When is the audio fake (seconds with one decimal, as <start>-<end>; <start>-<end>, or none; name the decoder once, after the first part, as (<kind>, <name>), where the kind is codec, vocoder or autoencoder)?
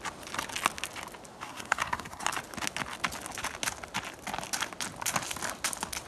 1.3-2.3 (codec, SNAC)